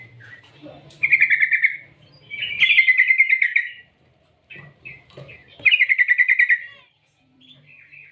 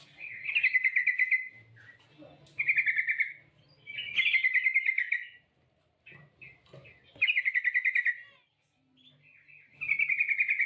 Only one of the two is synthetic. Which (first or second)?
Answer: first